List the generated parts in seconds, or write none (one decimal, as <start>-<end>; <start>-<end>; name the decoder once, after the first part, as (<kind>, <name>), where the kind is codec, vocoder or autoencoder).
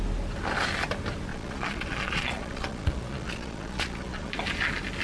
1.3-4.3 (vocoder, Vocos)